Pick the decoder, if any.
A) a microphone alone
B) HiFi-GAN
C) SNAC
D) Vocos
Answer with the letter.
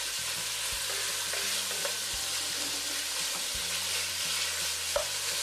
A